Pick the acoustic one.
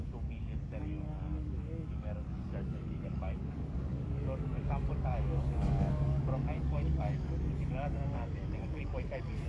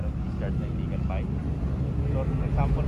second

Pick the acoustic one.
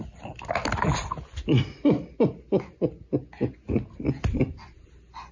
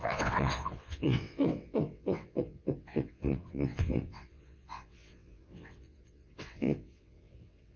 first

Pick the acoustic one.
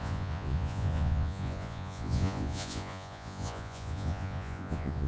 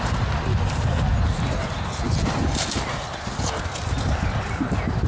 second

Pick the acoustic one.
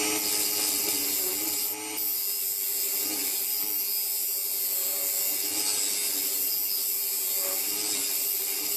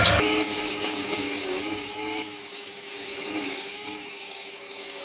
first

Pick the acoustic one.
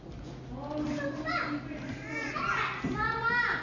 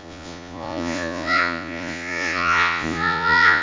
first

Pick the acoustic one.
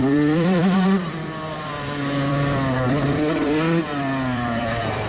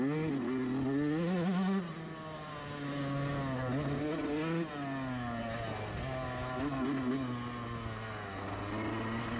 second